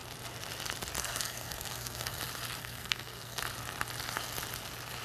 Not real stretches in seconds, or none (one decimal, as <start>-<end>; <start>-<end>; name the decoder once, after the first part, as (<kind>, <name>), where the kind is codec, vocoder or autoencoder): 1.0-2.2 (codec, SNAC); 2.6-3.4